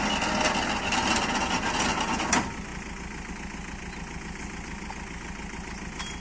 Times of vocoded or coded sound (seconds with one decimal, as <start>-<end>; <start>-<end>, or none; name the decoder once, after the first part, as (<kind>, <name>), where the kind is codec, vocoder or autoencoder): none